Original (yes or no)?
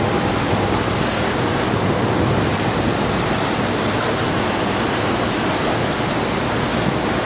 yes